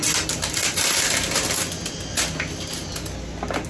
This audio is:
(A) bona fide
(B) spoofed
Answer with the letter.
A